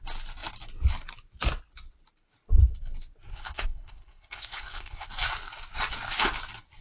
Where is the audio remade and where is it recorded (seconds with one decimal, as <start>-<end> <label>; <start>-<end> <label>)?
0.0-3.3 recorded; 3.3-5.1 remade; 5.1-6.8 recorded

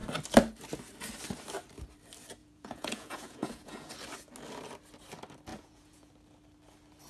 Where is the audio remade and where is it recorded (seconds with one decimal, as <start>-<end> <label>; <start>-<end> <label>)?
0.0-2.4 recorded; 2.4-3.9 remade; 3.9-5.5 recorded; 5.5-6.1 remade; 6.1-7.1 recorded